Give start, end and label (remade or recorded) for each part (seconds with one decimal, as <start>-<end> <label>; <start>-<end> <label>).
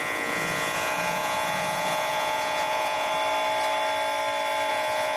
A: 0.0-3.1 remade; 3.1-4.7 recorded; 4.7-5.2 remade